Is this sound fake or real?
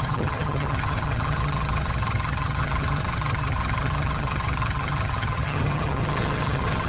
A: fake